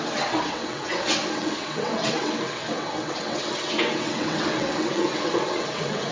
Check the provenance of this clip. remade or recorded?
remade